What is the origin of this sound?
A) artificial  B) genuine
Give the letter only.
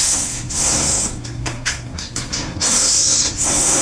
A